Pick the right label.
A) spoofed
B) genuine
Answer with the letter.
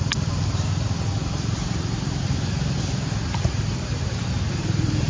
A